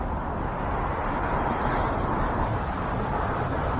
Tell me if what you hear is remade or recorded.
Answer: recorded